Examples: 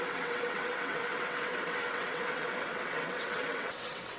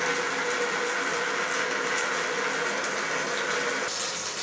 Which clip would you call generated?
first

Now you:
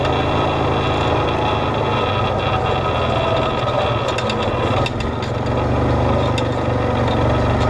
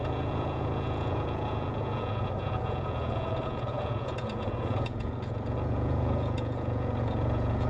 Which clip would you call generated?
second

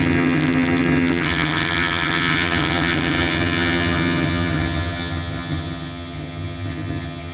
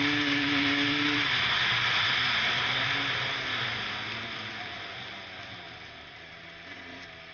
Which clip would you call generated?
first